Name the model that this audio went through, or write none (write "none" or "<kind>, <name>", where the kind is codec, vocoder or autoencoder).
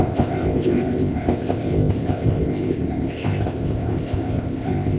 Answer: codec, ZipCodec